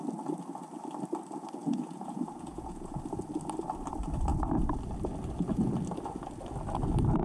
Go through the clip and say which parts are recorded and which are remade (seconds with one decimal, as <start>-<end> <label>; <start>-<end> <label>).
0.0-1.6 recorded; 1.6-3.0 remade; 3.0-7.2 recorded